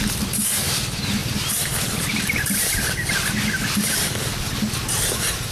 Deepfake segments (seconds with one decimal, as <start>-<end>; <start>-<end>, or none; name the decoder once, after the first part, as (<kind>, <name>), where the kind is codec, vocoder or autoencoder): 1.2-2.8 (vocoder, BigVGAN v2)